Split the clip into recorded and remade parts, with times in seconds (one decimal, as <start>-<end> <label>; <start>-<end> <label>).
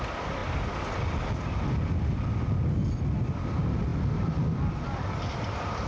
0.0-5.9 recorded